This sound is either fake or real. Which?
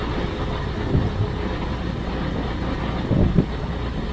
real